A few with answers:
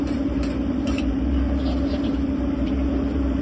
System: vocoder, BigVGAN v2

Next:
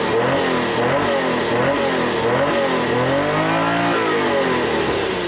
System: none